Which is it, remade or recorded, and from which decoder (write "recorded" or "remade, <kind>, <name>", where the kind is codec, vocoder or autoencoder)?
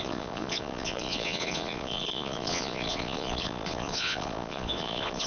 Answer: remade, vocoder, Vocos